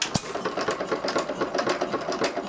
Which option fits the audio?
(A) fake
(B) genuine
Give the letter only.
B